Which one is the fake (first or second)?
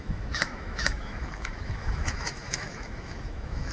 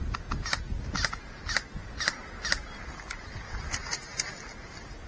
first